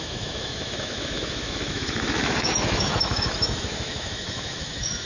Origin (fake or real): fake